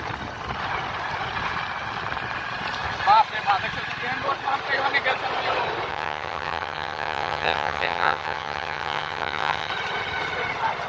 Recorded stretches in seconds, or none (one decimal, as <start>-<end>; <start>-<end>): 0.0-5.9; 9.7-10.9